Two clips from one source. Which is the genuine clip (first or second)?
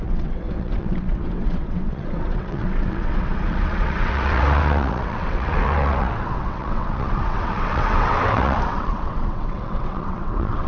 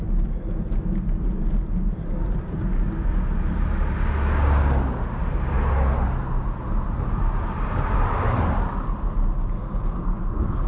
second